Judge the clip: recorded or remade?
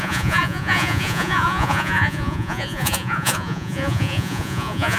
remade